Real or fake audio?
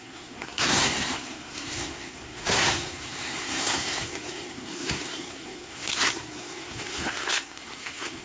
fake